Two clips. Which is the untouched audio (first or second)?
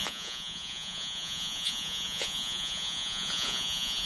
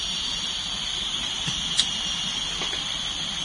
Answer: second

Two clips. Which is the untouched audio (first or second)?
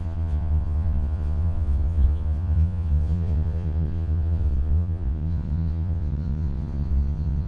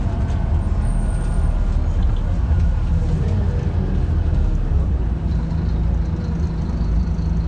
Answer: second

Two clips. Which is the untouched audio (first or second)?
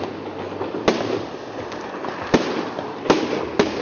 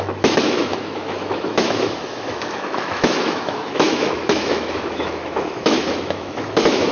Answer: first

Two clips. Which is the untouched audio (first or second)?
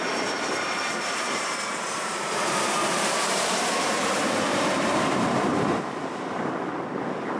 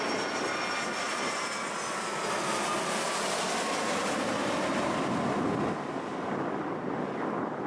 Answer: second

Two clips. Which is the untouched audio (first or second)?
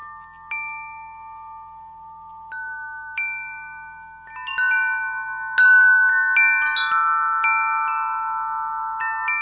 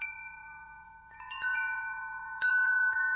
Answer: first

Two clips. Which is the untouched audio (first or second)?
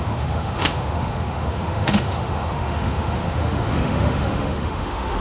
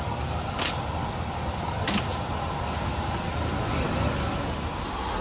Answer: second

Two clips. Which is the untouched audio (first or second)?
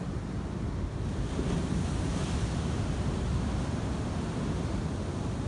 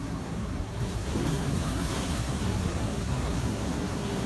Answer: first